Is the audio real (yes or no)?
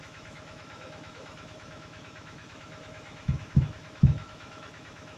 no